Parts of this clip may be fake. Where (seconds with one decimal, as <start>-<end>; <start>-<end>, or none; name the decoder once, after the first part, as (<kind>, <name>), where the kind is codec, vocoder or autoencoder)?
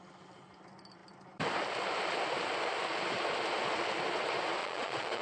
4.6-5.2 (vocoder, Vocos)